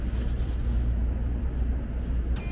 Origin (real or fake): real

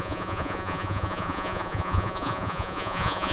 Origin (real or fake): fake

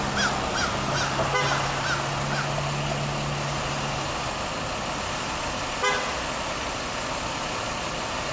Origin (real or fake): real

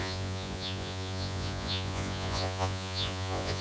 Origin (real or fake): fake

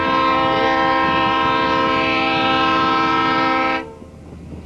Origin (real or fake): real